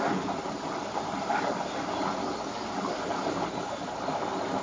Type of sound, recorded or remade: recorded